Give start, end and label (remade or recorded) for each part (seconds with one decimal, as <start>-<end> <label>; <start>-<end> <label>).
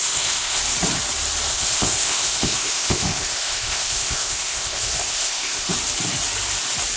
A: 0.0-0.6 remade; 0.6-1.5 recorded; 1.5-5.7 remade; 5.7-7.0 recorded